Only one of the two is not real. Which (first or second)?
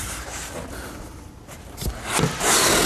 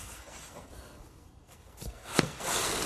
second